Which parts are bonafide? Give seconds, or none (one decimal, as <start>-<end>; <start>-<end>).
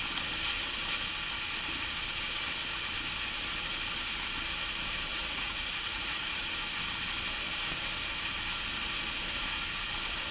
0.0-5.1; 6.5-10.3